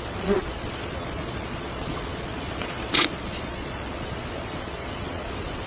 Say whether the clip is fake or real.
fake